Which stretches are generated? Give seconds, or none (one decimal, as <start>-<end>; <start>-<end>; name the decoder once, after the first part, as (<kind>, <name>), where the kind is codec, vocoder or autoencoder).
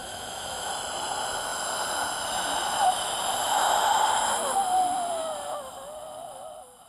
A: 0.0-0.7 (autoencoder, DAC-VAE)